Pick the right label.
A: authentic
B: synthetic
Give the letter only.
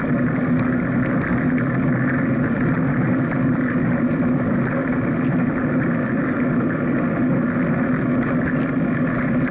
A